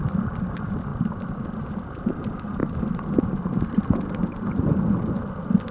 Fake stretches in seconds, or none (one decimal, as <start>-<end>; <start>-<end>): 0.9-1.5; 2.6-4.7